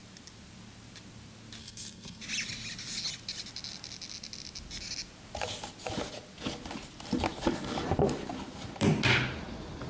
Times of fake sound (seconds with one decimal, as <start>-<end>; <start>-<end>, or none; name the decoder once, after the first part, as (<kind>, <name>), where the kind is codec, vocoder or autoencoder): 1.6-2.2 (codec, SNAC)